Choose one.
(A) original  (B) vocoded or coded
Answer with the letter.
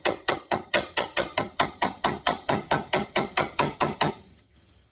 B